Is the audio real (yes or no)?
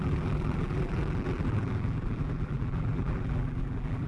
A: no